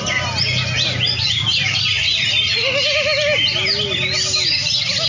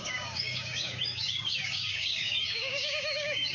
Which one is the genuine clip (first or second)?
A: first